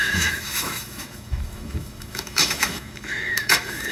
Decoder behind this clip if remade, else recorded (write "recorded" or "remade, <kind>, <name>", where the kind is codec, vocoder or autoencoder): remade, autoencoder, DAC-VAE